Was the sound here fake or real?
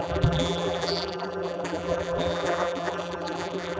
fake